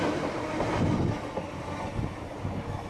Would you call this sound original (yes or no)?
yes